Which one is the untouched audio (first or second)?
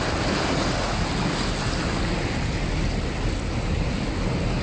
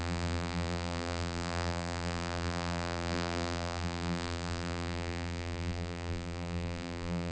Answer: first